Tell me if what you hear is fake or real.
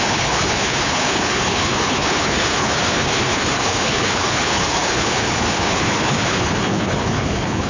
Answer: fake